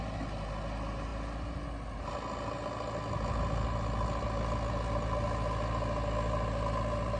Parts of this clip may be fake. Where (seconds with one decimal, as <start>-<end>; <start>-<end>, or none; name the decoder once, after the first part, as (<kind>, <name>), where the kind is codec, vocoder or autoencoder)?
none